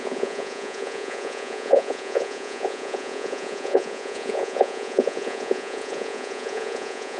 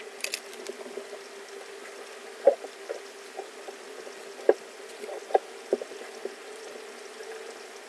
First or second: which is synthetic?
first